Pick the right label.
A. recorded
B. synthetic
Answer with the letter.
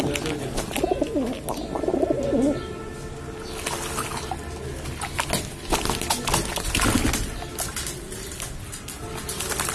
A